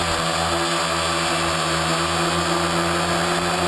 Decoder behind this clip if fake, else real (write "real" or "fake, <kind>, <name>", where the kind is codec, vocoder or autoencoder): real